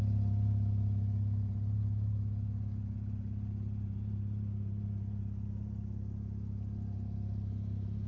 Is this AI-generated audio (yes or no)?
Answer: no